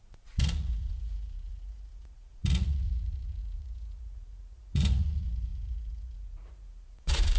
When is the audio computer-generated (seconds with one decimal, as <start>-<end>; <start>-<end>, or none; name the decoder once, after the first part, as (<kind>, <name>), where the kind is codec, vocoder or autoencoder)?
0.0-7.4 (vocoder, Vocos)